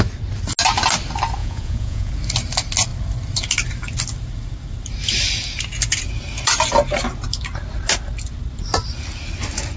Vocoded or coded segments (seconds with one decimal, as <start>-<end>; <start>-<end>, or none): 1.4-2.1